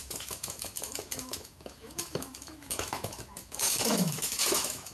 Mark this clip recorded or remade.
remade